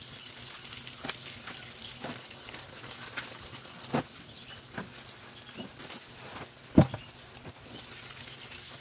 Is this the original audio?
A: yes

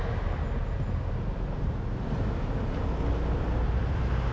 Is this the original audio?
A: yes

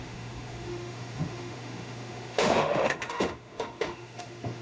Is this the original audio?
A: no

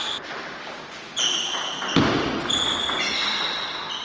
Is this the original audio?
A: yes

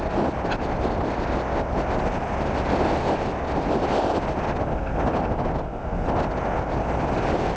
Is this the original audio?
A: yes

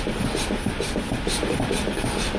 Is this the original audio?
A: yes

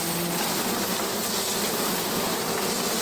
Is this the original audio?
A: yes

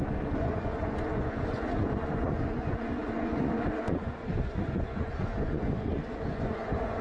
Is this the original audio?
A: no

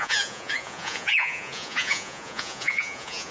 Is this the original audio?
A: no